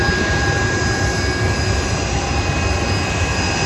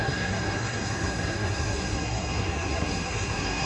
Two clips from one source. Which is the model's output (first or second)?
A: second